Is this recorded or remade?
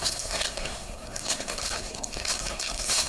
remade